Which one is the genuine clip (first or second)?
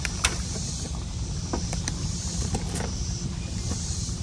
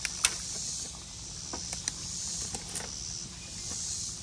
second